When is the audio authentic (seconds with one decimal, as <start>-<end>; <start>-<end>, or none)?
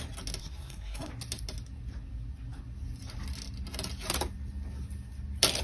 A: 0.0-0.4; 1.1-5.6